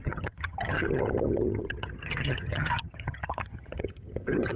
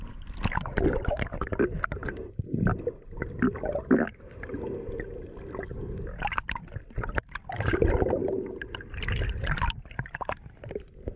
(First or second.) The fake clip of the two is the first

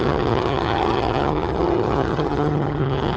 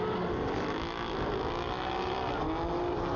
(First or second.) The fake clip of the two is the first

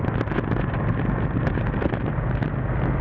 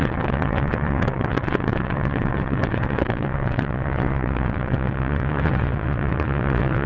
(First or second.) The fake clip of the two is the second